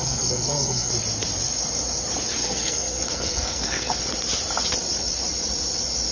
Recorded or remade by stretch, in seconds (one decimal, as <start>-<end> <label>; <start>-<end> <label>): 0.0-0.9 remade; 0.9-2.4 recorded; 2.4-4.0 remade; 4.0-6.1 recorded